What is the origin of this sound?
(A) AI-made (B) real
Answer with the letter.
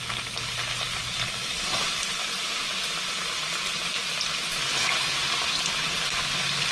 B